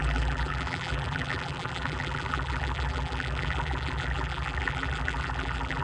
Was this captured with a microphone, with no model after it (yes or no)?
no